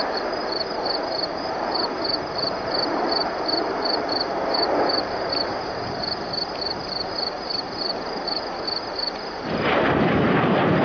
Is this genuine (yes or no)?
no